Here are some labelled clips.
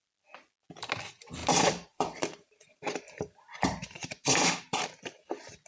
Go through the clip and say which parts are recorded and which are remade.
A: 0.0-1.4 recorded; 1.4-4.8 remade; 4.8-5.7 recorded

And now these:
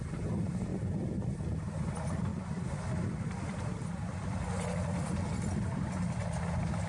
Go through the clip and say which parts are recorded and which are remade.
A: 0.0-0.7 recorded; 0.7-1.3 remade; 1.3-2.3 recorded; 2.3-6.4 remade; 6.4-6.9 recorded

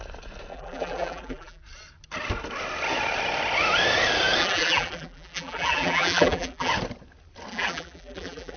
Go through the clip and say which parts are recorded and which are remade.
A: 0.0-0.5 recorded; 0.5-1.6 remade; 1.6-4.4 recorded; 4.4-6.7 remade; 6.7-7.5 recorded; 7.5-8.6 remade

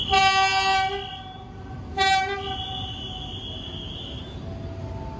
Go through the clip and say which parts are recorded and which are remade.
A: 0.0-5.2 recorded

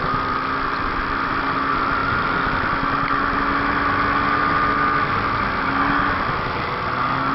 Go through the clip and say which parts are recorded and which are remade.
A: 0.0-2.0 remade; 2.0-6.4 recorded; 6.4-7.3 remade

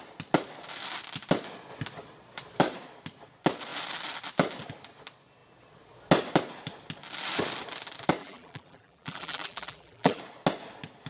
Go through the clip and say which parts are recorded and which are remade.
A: 0.0-8.2 recorded; 8.2-10.2 remade; 10.2-11.1 recorded

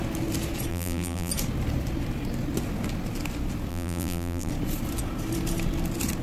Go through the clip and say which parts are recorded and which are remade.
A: 0.0-0.7 recorded; 0.7-1.3 remade; 1.3-3.7 recorded; 3.7-4.5 remade; 4.5-6.2 recorded